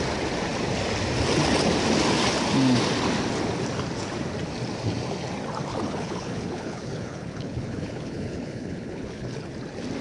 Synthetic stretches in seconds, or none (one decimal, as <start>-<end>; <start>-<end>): 5.7-9.5